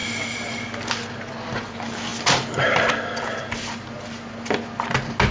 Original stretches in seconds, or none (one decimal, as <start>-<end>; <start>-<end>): 0.0-5.3